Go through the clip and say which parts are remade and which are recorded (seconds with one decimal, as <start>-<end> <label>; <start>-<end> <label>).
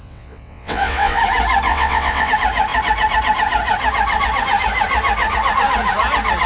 0.0-1.2 remade; 1.2-1.7 recorded; 1.7-2.3 remade; 2.3-6.5 recorded